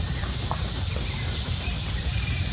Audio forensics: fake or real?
fake